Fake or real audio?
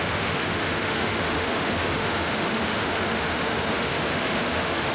fake